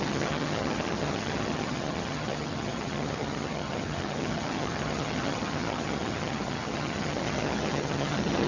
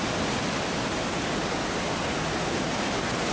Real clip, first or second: second